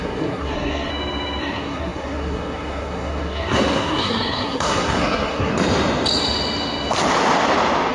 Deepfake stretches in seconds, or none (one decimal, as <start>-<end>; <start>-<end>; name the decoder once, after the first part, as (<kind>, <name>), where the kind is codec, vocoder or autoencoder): 0.0-0.9 (codec, SNAC); 1.4-5.5